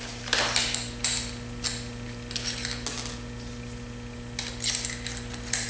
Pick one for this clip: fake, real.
real